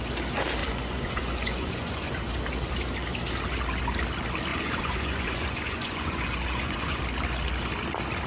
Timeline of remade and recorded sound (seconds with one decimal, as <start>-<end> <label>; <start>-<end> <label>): 0.0-0.6 recorded; 0.6-2.1 remade; 2.1-4.5 recorded; 4.5-7.0 remade; 7.0-8.3 recorded